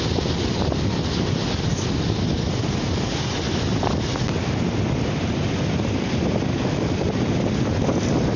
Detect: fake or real real